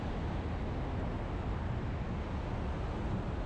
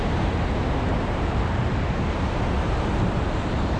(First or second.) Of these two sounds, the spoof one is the second